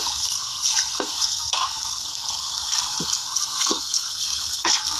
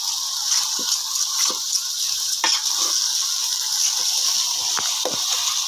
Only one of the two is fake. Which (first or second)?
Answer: first